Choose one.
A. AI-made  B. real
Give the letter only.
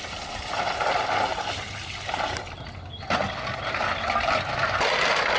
B